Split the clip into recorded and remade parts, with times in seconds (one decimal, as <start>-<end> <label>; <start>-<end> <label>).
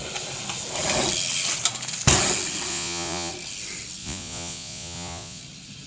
0.0-2.7 recorded; 2.7-3.3 remade; 3.3-4.0 recorded; 4.0-5.4 remade; 5.4-5.9 recorded